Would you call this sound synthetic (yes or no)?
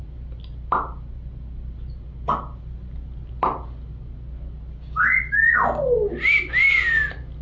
no